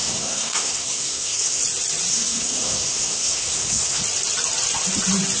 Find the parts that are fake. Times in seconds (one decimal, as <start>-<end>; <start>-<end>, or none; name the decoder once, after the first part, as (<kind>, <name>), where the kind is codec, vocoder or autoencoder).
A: 0.0-1.6 (codec, SNAC); 2.1-4.0